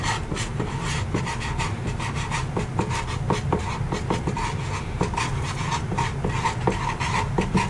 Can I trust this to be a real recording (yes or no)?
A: yes